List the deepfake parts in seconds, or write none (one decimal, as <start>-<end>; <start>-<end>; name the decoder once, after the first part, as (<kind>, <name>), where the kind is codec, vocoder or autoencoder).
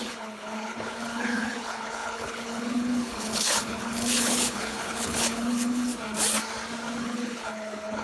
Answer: 0.0-5.9 (codec, HILCodec); 7.0-8.0